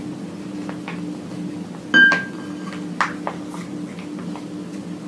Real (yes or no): yes